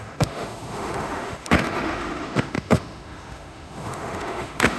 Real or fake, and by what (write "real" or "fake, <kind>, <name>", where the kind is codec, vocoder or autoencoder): fake, autoencoder, DAC-VAE